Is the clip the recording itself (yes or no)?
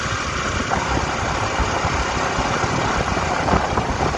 yes